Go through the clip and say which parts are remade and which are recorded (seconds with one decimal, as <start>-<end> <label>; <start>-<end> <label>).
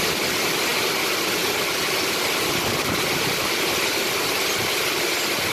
0.0-5.5 recorded